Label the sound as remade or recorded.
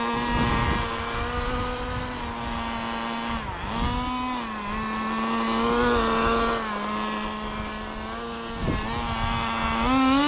recorded